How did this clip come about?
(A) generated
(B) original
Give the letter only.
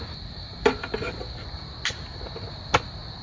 B